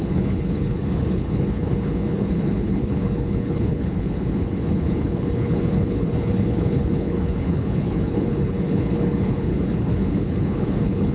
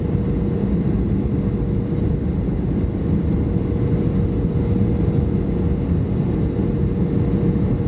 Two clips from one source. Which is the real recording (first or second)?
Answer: second